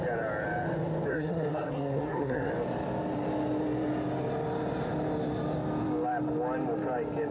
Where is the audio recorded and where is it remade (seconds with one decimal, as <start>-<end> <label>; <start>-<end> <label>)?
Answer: 0.0-1.1 recorded; 1.1-2.5 remade; 2.5-7.3 recorded